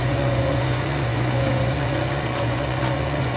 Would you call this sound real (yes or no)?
no